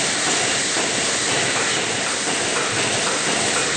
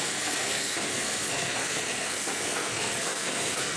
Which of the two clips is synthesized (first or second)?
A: second